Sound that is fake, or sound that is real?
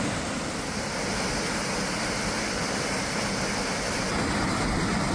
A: real